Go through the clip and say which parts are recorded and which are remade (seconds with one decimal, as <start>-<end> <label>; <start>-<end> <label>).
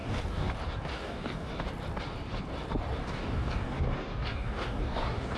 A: 0.0-0.5 remade; 0.5-0.9 recorded; 0.9-1.5 remade; 1.5-3.0 recorded; 3.0-5.4 remade